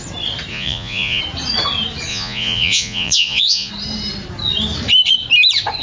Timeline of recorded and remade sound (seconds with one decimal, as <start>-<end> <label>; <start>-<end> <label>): 0.0-0.5 recorded; 0.5-1.2 remade; 1.2-2.1 recorded; 2.1-3.7 remade; 3.7-5.8 recorded